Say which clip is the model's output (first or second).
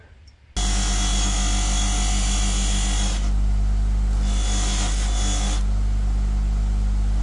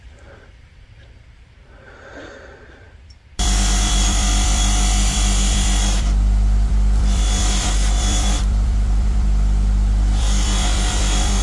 second